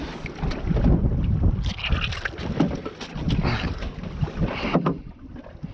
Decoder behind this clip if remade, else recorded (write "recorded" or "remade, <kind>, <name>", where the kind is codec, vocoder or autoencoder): recorded